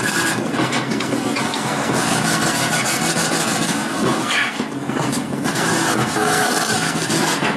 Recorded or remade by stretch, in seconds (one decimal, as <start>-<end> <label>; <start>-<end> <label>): 0.0-7.6 remade